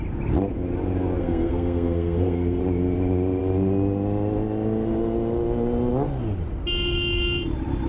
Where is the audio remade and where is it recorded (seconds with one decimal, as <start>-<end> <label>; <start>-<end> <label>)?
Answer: 0.0-1.2 recorded; 1.2-2.6 remade; 2.6-7.9 recorded

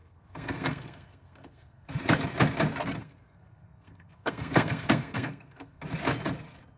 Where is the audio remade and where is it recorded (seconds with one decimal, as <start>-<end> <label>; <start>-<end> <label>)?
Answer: 0.0-1.9 remade; 1.9-3.0 recorded; 3.0-5.8 remade; 5.8-6.8 recorded